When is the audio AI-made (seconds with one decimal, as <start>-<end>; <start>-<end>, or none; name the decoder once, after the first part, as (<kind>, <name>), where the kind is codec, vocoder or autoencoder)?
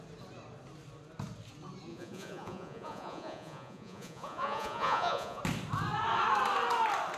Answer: 1.9-5.4 (vocoder, Vocos)